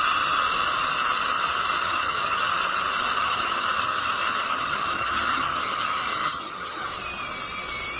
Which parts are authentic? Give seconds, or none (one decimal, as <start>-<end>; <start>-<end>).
0.0-1.8; 2.5-3.2; 6.9-8.0